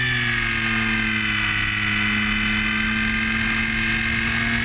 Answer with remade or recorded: recorded